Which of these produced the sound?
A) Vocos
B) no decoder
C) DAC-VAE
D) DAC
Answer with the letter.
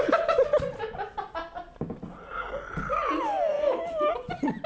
B